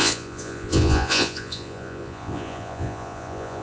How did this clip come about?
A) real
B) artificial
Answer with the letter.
B